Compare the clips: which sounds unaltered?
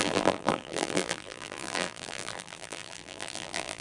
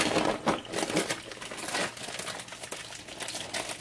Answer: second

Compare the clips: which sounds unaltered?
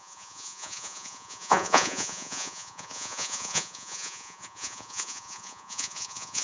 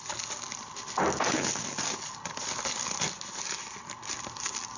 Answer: second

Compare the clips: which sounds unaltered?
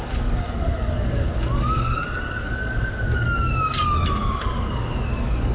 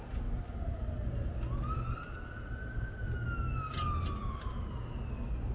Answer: second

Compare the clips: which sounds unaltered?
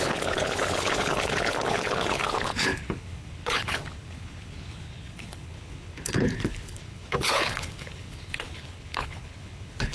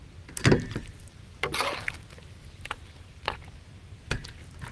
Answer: second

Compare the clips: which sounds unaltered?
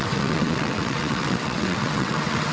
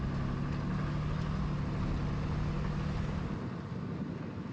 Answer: second